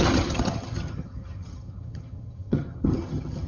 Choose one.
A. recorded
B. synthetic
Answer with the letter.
B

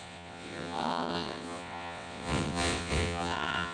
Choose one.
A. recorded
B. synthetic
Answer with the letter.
B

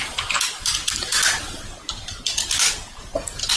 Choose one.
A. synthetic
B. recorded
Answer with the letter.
B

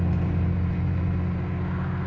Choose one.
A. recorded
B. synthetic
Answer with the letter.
A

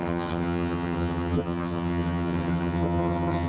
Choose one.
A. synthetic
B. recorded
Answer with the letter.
A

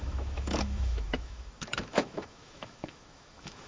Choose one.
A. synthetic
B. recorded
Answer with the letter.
A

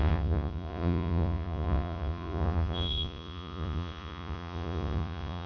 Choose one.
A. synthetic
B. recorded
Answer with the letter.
A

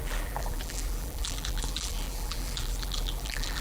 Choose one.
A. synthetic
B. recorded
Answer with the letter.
A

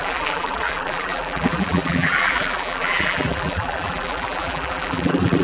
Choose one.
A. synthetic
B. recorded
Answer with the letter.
A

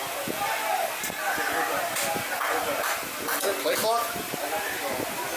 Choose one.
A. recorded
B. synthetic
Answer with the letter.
A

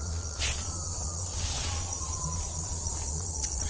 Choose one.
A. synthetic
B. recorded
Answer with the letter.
A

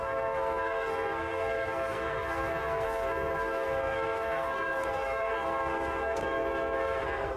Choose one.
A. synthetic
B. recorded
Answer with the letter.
A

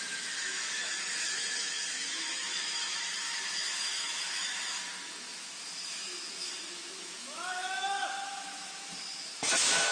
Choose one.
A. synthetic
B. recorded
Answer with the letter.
A